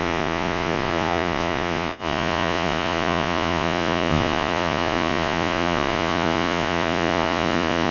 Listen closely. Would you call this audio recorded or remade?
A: remade